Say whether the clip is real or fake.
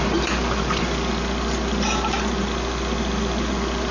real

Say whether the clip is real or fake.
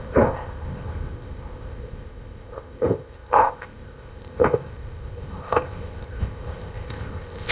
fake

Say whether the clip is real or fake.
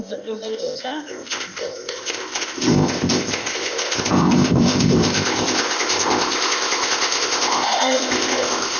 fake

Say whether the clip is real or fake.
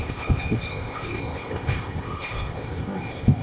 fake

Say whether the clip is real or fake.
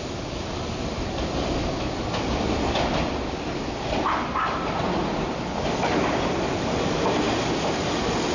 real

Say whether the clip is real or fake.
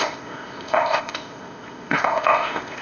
fake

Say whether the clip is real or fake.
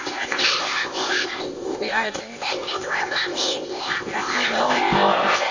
fake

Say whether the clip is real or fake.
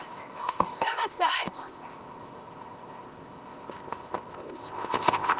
fake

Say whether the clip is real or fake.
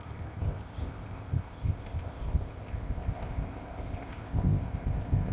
fake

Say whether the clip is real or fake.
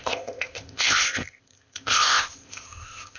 fake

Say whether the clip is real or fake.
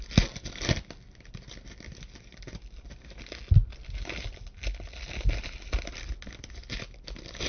real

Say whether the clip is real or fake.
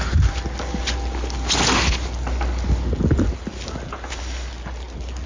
real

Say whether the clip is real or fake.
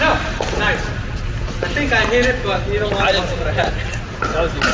real